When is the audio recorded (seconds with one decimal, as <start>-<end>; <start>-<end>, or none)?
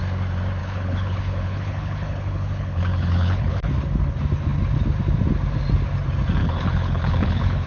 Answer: 0.0-0.6; 3.7-6.4